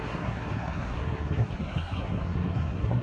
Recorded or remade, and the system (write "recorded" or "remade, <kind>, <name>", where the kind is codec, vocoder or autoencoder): remade, codec, SNAC